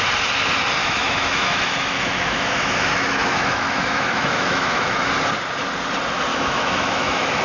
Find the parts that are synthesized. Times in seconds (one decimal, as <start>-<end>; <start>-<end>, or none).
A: 0.8-5.1; 6.3-7.4